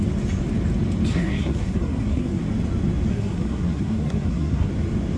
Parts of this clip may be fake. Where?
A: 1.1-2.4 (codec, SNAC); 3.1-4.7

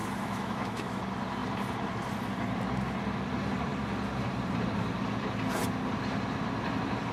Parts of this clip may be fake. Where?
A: 0.0-1.0 (autoencoder, DAC-VAE)

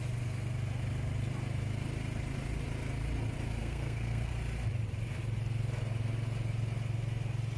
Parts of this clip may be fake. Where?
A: 3.6-4.3 (codec, SNAC)

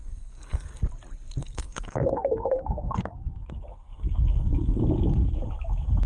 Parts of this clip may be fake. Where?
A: 0.0-0.8 (codec, SNAC); 1.4-4.8

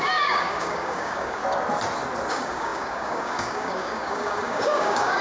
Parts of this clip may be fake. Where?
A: 0.0-1.4 (codec, DAC); 2.3-5.2

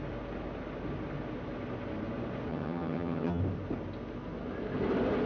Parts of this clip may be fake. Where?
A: 2.5-3.4 (vocoder, HiFi-GAN)

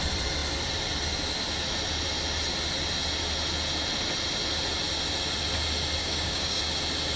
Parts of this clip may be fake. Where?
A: 6.0-6.6 (codec, DAC)

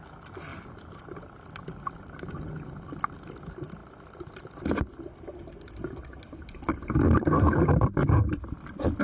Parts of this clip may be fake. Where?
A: none